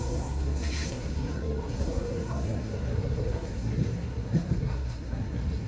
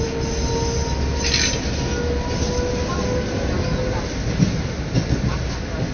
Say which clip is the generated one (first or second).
first